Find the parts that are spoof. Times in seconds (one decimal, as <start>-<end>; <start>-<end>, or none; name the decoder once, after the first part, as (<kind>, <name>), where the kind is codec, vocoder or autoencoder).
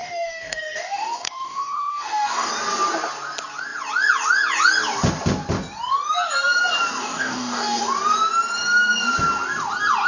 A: 0.0-2.5 (codec, DAC); 7.0-7.8